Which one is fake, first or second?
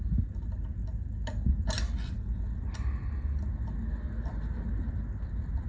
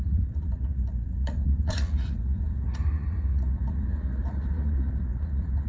second